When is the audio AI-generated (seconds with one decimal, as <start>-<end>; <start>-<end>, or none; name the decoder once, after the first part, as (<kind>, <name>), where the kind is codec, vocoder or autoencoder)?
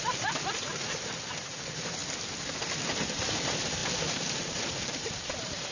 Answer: 0.0-2.0 (vocoder, BigVGAN v2); 2.8-5.7